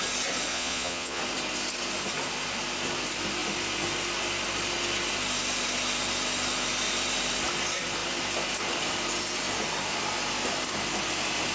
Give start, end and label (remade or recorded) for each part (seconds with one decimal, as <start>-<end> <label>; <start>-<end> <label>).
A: 0.0-0.5 recorded; 0.5-1.2 remade; 1.2-11.5 recorded